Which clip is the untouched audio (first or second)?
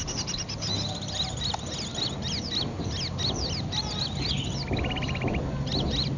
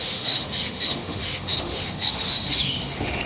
first